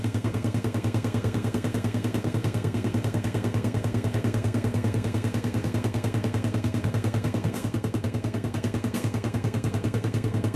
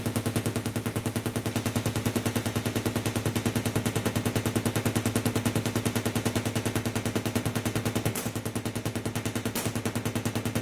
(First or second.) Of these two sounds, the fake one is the first